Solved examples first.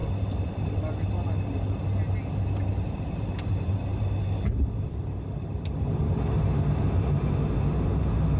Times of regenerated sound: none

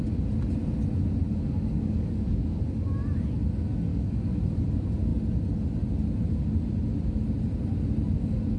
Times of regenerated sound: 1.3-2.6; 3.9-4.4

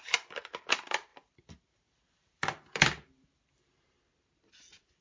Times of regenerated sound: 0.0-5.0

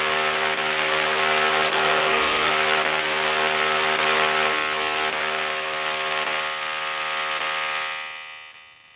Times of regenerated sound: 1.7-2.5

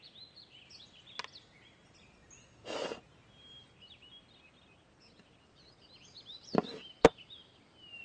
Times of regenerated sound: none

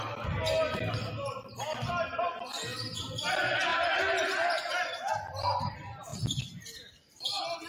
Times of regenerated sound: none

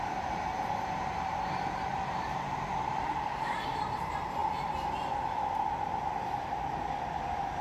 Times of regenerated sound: 0.0-4.4; 6.8-7.6